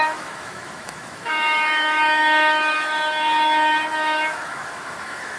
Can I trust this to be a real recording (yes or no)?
no